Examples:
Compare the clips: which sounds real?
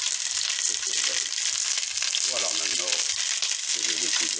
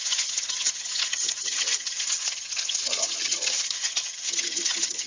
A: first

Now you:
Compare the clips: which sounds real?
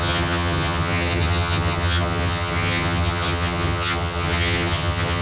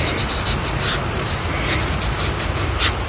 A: second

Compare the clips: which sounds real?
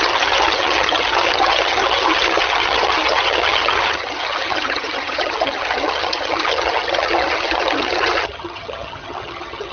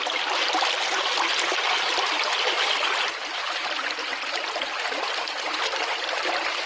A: second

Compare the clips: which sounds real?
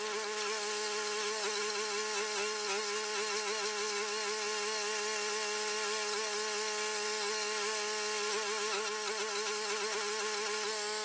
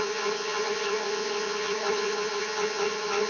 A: first